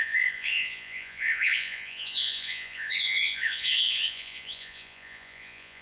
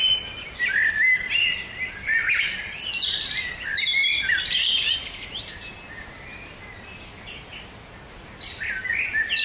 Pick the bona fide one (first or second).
second